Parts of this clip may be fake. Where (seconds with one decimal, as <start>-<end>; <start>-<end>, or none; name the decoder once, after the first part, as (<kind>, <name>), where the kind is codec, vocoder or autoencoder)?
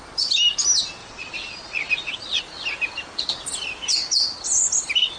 1.0-2.4 (vocoder, Vocos)